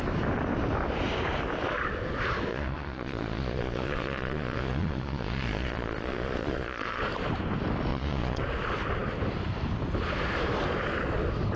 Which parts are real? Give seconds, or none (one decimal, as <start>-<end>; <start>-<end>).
0.0-2.5; 7.0-7.9; 8.4-11.6

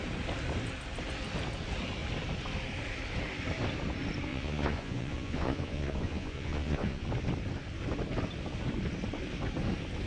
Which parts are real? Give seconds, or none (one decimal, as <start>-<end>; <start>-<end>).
0.0-4.3; 7.1-10.1

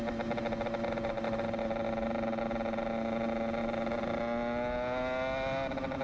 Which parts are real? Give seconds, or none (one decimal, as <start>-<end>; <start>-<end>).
0.0-6.0

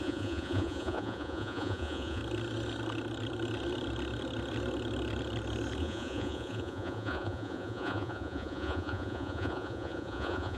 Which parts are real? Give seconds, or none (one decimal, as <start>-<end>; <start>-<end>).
2.2-5.8

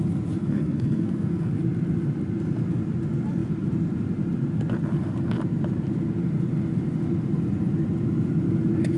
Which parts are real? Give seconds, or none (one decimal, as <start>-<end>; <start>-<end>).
0.0-0.4; 1.5-9.0

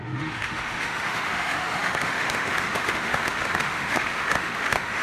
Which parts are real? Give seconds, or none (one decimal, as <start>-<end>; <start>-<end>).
none

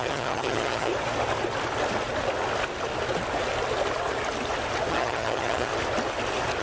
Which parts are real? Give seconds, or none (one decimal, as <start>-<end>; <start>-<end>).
0.9-4.9; 5.7-6.6

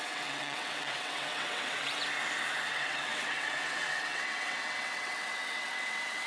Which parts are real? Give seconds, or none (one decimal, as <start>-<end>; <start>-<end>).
2.0-2.7